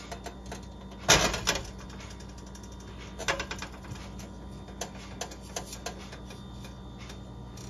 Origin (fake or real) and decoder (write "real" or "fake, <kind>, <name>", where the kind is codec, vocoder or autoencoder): real